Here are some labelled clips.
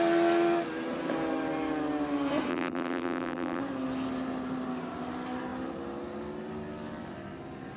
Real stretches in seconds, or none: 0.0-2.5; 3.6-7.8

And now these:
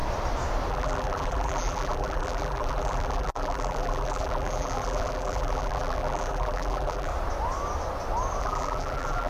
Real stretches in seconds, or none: 0.0-0.7; 7.1-8.4

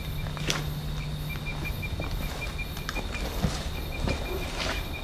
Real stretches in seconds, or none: 0.0-5.0

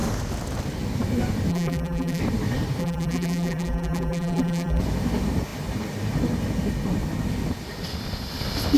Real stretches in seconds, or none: 0.0-1.5; 2.2-2.8; 4.8-8.8

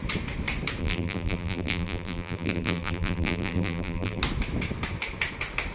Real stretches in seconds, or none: 0.0-0.8; 4.2-5.7

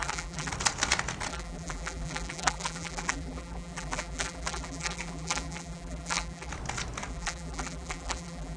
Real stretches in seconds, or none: 0.5-1.3; 6.5-7.1